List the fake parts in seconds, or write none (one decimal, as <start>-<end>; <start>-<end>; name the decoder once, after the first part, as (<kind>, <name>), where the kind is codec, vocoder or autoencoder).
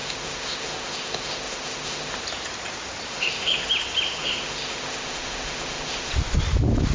0.0-2.2 (autoencoder, DAC-VAE); 3.1-3.7; 4.2-6.1